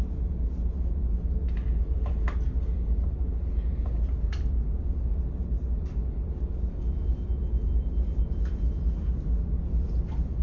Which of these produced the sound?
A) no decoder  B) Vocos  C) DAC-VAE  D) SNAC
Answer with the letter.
A